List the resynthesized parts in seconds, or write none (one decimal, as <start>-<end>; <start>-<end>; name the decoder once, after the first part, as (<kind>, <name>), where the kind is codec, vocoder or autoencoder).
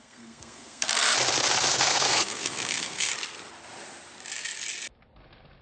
0.0-0.9 (codec, SNAC); 1.7-3.1